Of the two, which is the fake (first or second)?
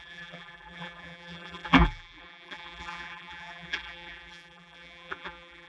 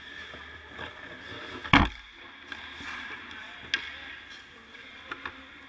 first